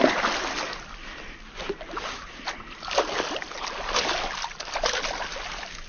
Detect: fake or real real